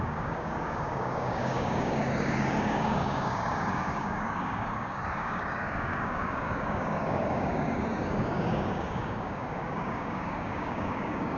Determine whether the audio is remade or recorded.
remade